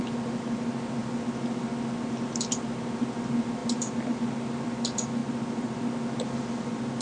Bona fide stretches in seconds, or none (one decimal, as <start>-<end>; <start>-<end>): 0.0-3.6; 4.2-5.2; 5.8-7.0